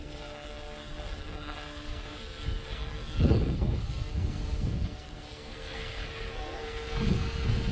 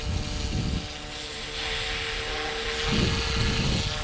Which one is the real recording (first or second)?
second